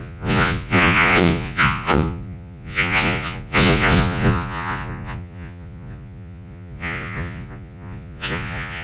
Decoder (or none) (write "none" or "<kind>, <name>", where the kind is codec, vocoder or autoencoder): vocoder, Vocos